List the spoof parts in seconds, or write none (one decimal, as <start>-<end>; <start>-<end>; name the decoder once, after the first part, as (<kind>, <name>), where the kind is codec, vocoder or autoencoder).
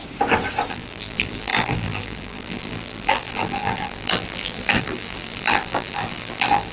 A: 0.7-6.7 (vocoder, BigVGAN v2)